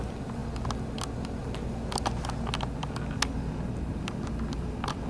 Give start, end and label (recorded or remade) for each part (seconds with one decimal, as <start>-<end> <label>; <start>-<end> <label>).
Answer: 0.0-5.1 recorded